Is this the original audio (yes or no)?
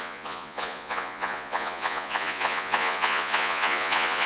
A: no